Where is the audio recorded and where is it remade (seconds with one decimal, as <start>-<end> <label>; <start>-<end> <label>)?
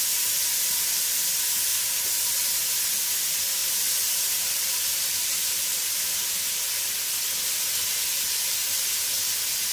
0.0-1.7 recorded; 1.7-2.3 remade; 2.3-3.6 recorded; 3.6-6.2 remade; 6.2-8.6 recorded; 8.6-9.2 remade; 9.2-9.7 recorded